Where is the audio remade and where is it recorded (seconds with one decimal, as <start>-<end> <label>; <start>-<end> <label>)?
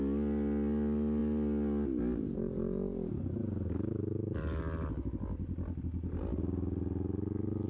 0.0-7.7 recorded